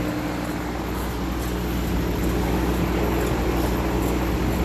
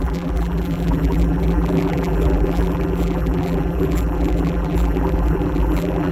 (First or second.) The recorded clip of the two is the first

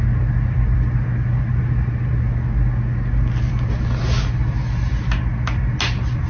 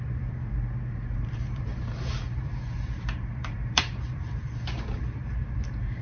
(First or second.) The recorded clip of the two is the first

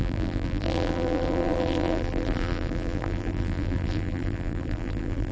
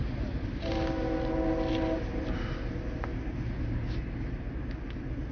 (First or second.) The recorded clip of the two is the second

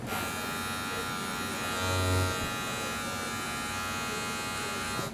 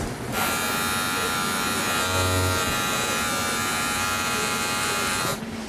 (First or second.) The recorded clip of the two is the first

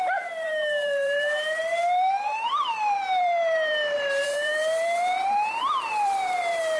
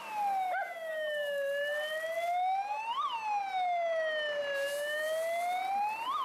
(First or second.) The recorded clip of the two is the second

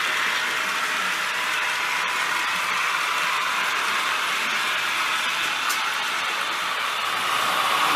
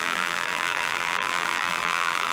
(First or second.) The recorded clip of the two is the first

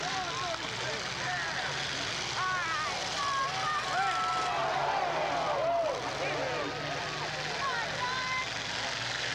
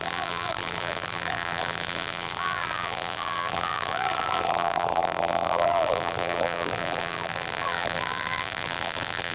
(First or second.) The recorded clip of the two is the first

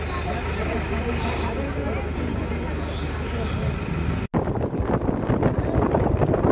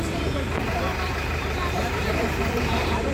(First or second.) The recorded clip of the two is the first